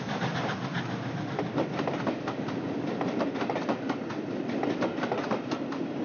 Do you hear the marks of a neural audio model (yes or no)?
no